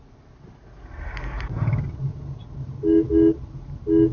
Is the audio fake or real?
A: real